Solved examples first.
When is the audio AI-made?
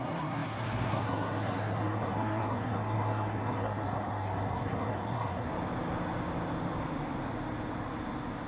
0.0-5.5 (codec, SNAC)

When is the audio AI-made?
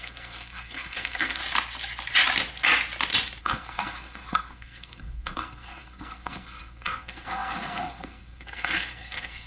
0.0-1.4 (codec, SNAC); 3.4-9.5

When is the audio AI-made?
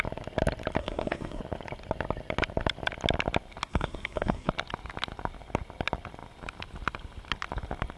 0.8-1.4 (codec, SNAC); 3.7-4.5